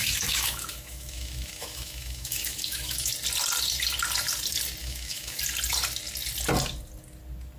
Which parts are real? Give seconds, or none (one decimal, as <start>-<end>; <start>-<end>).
3.1-4.8; 5.4-7.6